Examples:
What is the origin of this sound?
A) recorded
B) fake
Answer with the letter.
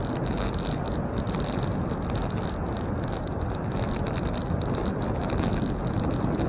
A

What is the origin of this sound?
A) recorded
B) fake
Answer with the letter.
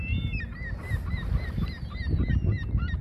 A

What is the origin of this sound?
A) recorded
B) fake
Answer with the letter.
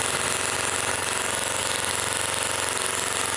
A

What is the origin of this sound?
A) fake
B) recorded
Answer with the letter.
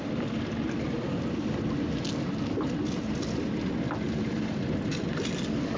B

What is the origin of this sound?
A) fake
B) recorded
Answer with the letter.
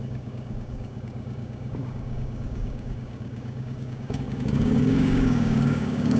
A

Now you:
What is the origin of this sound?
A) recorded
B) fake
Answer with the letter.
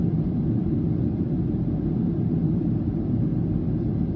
A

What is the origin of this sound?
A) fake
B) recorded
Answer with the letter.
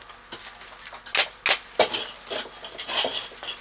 B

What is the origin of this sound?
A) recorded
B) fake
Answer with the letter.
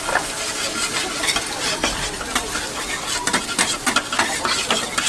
A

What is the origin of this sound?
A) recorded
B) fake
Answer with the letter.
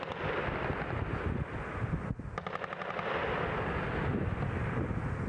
A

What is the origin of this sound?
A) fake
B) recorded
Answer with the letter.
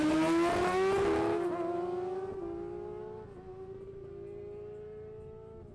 B